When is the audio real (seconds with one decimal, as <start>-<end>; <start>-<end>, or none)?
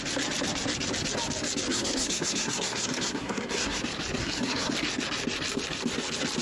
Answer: 0.0-1.7; 3.8-4.2; 4.7-6.4